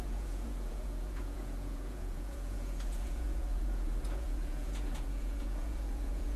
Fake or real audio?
fake